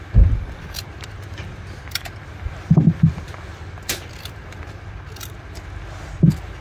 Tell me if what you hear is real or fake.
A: real